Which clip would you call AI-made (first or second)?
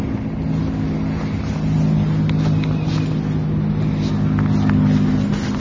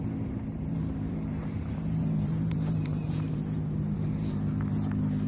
second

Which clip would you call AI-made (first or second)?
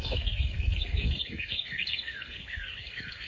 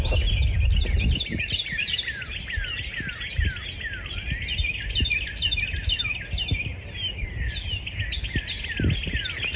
first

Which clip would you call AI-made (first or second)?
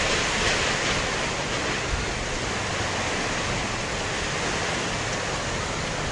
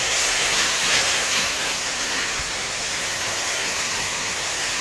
second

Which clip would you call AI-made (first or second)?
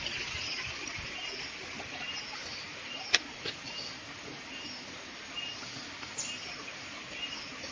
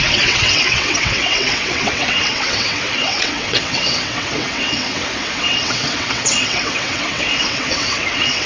second